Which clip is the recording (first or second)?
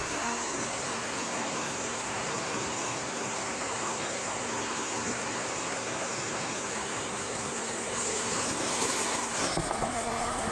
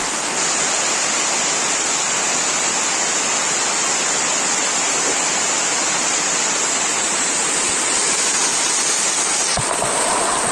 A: second